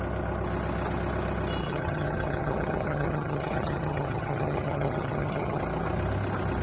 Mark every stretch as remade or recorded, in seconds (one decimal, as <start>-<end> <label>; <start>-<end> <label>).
0.0-1.6 recorded; 1.6-5.6 remade; 5.6-6.6 recorded